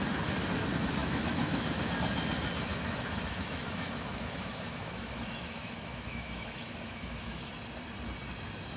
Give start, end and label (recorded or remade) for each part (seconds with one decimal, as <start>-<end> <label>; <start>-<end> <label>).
0.0-1.0 recorded; 1.0-1.8 remade; 1.8-2.7 recorded; 2.7-7.5 remade; 7.5-8.8 recorded